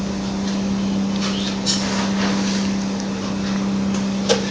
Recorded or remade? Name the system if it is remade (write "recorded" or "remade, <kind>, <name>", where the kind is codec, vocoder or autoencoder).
recorded